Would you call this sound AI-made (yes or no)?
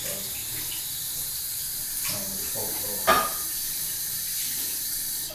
no